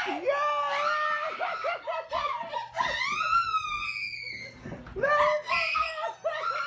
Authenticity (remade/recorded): recorded